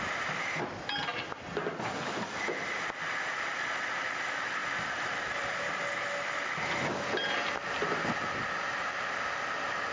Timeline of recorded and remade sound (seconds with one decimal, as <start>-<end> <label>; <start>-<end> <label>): 0.0-4.6 recorded; 4.6-5.7 remade; 5.7-9.9 recorded